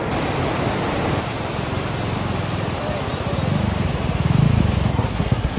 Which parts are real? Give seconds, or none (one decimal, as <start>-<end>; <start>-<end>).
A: 0.0-4.9